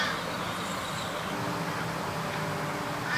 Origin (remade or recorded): recorded